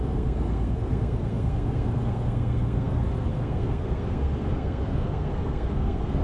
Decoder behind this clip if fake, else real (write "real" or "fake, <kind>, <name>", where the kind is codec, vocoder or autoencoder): fake, codec, SNAC